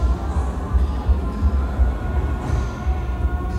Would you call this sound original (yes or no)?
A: yes